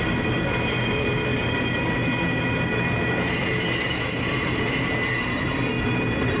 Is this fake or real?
fake